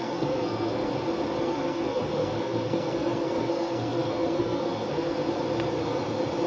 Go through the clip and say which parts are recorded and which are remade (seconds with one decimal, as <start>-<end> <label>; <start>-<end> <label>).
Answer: 0.0-0.9 remade; 0.9-1.4 recorded; 1.4-5.2 remade; 5.2-6.5 recorded